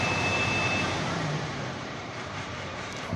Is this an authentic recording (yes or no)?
no